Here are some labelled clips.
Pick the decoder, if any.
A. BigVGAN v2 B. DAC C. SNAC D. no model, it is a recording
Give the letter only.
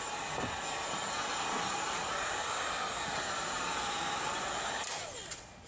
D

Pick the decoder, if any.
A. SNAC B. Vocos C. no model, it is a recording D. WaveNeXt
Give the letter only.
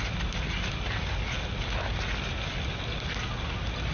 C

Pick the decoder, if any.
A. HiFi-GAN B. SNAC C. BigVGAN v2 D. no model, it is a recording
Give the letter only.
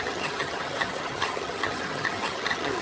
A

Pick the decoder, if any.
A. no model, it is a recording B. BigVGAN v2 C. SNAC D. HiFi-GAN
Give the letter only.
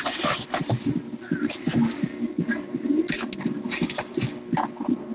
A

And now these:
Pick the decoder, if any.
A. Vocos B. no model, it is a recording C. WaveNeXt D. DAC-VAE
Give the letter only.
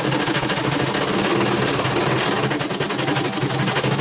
B